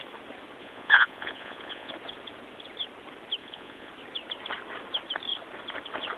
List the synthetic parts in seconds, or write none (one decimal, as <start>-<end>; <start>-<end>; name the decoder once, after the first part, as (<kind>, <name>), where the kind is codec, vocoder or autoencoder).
0.6-1.9 (vocoder, Vocos); 3.4-3.9